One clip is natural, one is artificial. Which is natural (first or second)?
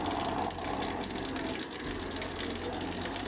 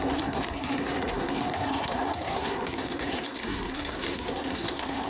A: first